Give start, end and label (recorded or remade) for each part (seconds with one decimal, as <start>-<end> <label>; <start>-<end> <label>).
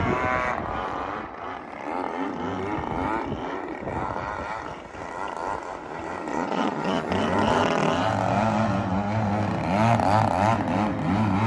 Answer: 0.0-6.3 recorded; 6.3-7.1 remade; 7.1-11.5 recorded